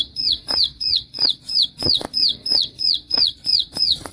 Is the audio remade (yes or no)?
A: yes